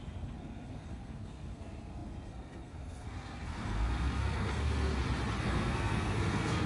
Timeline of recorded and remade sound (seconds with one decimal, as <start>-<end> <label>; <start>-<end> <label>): 0.0-4.9 remade; 4.9-5.4 recorded; 5.4-6.7 remade